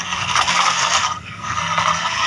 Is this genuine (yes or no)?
no